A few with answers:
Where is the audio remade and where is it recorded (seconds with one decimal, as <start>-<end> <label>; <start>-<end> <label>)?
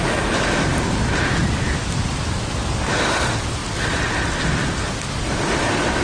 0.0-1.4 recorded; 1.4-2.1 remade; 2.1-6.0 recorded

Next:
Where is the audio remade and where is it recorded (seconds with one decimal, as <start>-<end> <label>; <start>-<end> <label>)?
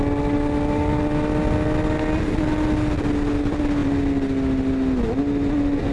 0.0-5.9 recorded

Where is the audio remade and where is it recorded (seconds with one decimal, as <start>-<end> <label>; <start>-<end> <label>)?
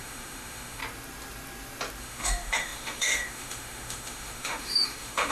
0.0-0.8 remade; 0.8-2.0 recorded; 2.0-5.3 remade